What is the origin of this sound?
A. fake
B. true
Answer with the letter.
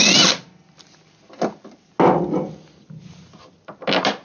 B